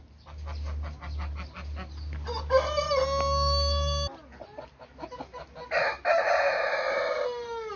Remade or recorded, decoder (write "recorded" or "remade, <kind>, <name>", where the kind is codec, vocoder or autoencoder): recorded